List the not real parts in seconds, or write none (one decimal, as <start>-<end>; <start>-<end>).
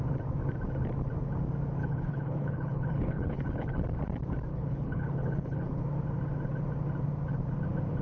1.8-3.8; 4.5-5.8